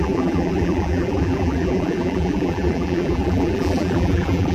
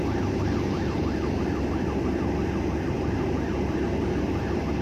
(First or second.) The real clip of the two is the second